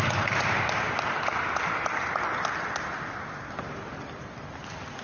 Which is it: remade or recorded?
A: recorded